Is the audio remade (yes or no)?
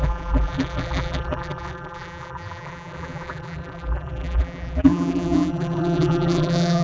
yes